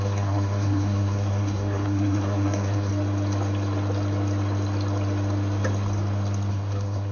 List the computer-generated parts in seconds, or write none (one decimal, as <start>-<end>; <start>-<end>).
0.0-2.9; 6.5-7.1